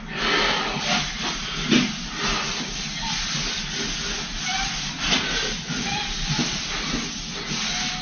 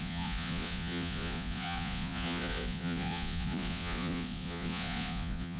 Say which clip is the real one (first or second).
first